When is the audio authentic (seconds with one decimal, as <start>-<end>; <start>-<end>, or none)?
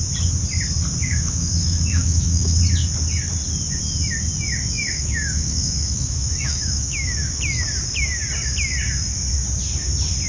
0.0-1.0; 2.6-4.8; 7.4-10.3